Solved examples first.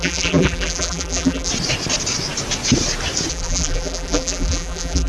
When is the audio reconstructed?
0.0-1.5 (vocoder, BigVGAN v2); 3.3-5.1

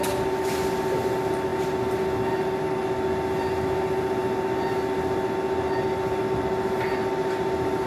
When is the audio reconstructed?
none

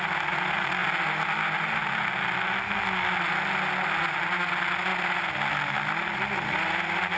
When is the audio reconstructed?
none

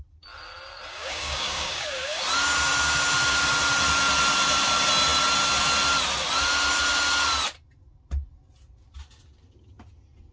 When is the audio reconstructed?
0.9-2.2 (codec, DAC)

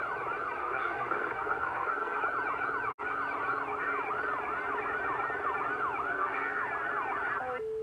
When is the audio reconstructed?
0.6-2.2 (codec, SNAC); 6.1-6.6